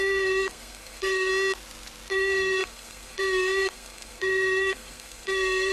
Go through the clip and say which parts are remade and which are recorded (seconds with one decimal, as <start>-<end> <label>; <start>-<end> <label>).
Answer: 0.0-1.3 remade; 1.3-2.1 recorded; 2.1-5.7 remade